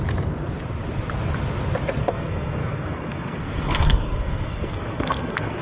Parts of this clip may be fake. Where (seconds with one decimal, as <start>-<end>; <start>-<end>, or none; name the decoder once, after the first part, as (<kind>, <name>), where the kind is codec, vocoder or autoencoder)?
2.0-5.6 (codec, SNAC)

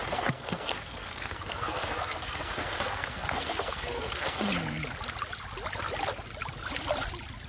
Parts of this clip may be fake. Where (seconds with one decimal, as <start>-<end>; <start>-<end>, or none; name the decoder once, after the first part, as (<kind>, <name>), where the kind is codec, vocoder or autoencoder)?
0.0-4.5 (codec, SNAC)